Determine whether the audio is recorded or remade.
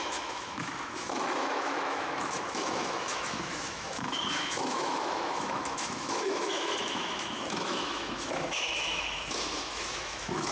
remade